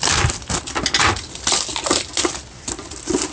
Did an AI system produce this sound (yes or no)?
no